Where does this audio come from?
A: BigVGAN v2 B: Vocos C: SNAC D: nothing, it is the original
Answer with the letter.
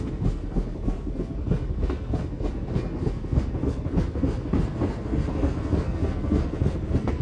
C